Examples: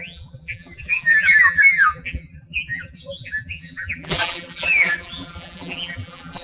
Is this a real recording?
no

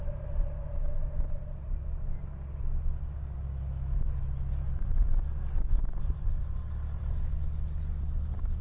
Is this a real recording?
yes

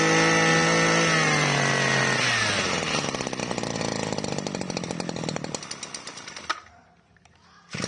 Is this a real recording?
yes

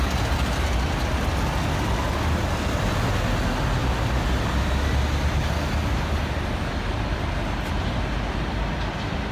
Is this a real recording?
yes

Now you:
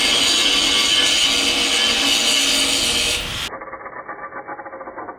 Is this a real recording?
yes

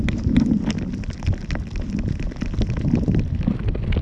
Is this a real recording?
yes